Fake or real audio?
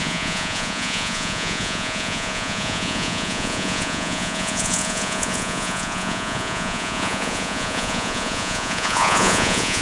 fake